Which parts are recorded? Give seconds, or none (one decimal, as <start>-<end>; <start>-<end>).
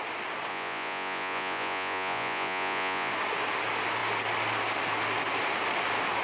0.0-0.5; 3.1-6.2